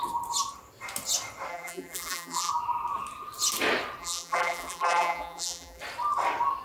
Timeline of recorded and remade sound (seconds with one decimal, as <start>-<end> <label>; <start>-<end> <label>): 0.0-1.5 recorded; 1.5-2.5 remade; 2.5-4.0 recorded; 4.0-5.8 remade; 5.8-6.6 recorded